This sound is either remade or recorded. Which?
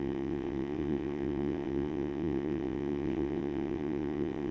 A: remade